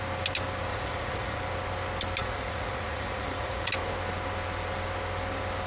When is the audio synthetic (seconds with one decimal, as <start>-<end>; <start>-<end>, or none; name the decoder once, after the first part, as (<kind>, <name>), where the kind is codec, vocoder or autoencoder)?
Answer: 0.7-1.4 (vocoder, Vocos); 2.2-3.7